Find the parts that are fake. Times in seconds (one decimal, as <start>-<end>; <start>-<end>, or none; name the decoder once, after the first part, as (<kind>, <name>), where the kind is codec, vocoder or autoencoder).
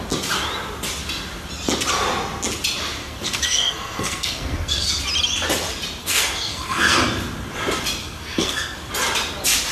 3.0-5.0 (codec, SNAC); 6.0-7.0; 8.0-8.9